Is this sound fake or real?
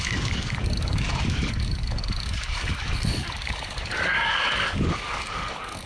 fake